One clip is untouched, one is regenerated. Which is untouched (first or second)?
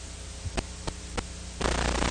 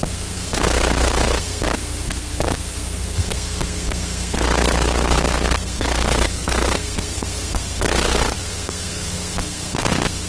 first